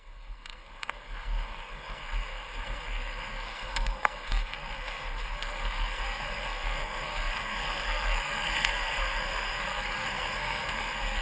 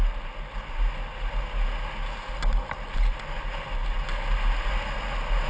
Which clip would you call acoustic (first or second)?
second